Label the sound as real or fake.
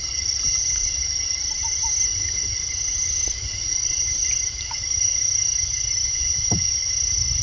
real